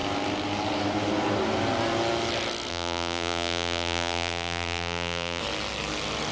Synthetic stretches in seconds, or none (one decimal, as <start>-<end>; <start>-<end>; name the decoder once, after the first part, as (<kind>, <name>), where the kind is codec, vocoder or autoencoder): 2.7-5.4 (vocoder, BigVGAN v2)